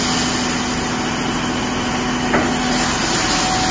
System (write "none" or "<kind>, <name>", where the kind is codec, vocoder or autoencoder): none